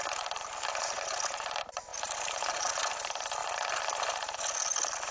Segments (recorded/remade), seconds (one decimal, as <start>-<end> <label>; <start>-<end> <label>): 0.0-5.1 remade